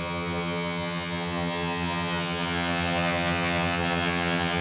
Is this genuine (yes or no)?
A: no